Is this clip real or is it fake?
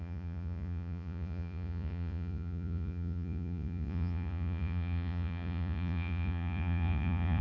fake